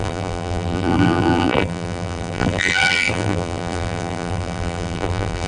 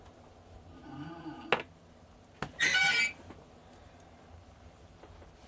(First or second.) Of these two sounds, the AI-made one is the first